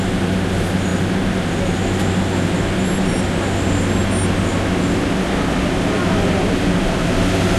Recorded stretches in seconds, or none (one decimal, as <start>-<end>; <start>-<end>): 0.0-7.6